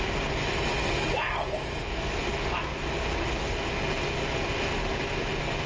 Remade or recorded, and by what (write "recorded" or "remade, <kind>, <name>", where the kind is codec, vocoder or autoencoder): recorded